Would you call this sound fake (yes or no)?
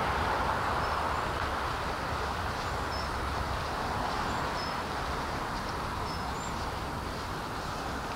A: yes